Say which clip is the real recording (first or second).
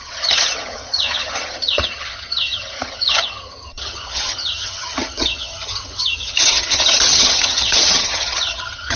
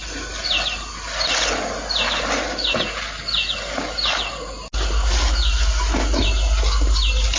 second